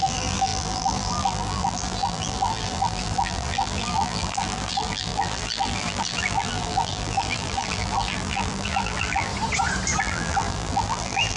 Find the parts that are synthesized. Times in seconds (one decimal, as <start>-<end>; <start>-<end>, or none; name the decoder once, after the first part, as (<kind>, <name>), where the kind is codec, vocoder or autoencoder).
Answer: 0.0-9.3 (vocoder, BigVGAN v2); 10.0-11.4